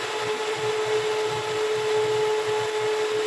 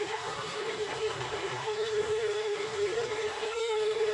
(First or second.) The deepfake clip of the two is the second